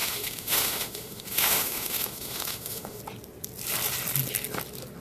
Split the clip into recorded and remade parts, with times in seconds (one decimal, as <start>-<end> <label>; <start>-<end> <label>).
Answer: 0.0-3.0 remade; 3.0-5.0 recorded